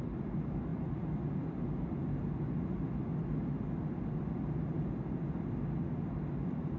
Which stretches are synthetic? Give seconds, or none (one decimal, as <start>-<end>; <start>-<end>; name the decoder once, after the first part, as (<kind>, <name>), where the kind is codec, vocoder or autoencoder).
none